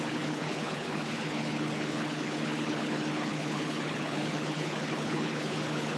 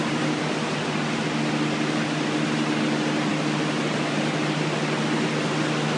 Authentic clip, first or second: second